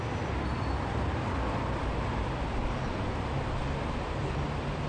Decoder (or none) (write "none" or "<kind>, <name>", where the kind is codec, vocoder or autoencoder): none